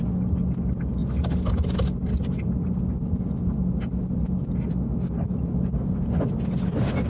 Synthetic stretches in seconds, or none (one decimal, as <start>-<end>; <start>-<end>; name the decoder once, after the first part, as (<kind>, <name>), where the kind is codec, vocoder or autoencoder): none